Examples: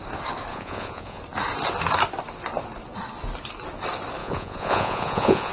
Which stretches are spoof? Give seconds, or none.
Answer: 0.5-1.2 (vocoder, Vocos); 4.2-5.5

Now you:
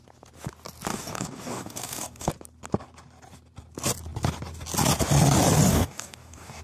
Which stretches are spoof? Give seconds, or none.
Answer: 0.9-2.3 (codec, DAC); 5.7-6.6

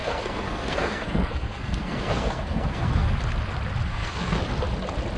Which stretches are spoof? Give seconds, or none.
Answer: 0.0-3.1 (codec, SNAC); 3.9-4.4

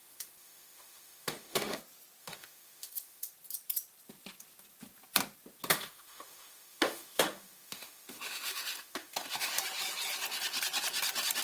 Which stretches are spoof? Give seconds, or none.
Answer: 0.0-1.8 (autoencoder, DAC-VAE); 2.2-3.3; 5.7-9.6

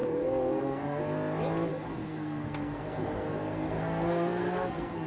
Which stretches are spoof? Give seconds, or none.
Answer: 0.0-1.0 (codec, SNAC); 1.7-5.1

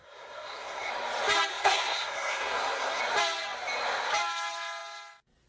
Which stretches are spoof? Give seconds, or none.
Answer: 0.0-0.9 (codec, SNAC); 1.5-3.0